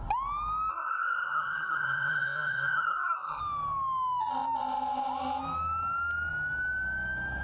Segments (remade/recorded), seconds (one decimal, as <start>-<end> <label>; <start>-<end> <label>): 0.0-0.7 recorded; 0.7-3.4 remade; 3.4-7.4 recorded